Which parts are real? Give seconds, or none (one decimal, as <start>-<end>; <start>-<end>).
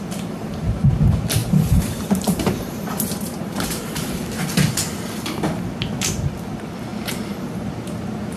0.0-1.4; 4.1-8.4